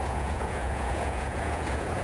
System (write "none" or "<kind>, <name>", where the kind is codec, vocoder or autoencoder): vocoder, Vocos